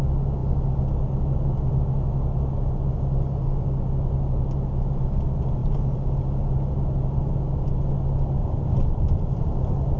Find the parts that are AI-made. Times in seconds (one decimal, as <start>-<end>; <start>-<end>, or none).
5.6-6.2; 8.4-9.6